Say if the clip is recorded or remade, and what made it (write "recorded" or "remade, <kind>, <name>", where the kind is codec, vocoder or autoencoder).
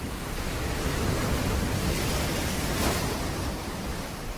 recorded